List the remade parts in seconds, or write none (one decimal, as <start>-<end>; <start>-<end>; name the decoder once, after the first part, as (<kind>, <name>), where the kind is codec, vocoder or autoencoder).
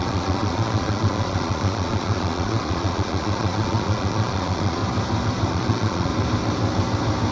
0.0-4.8 (vocoder, Vocos); 5.5-6.1